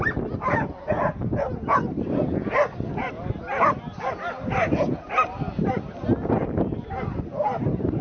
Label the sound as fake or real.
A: real